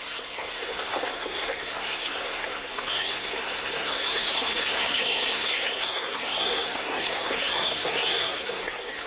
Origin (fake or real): fake